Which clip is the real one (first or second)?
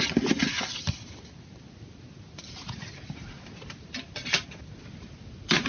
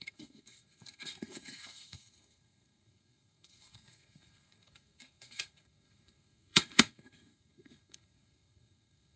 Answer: first